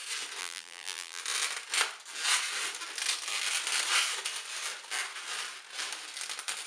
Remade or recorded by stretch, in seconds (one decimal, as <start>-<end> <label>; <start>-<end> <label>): 0.0-0.4 recorded; 0.4-1.2 remade; 1.2-6.7 recorded